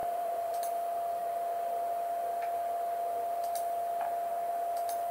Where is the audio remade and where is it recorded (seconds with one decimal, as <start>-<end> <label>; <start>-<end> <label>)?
0.0-0.6 remade; 0.6-5.1 recorded